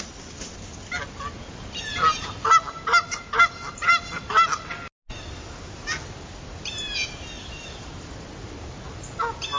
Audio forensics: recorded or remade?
recorded